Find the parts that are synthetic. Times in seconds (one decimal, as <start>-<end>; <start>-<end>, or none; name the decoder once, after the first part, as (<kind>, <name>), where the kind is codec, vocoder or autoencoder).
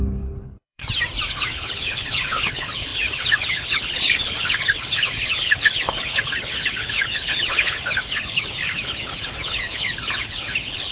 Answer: 0.0-0.8 (codec, HILCodec); 1.3-10.9